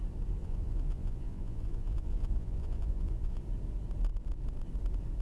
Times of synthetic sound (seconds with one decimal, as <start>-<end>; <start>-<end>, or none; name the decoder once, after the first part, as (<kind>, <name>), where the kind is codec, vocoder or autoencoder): 0.4-3.4 (vocoder, Vocos)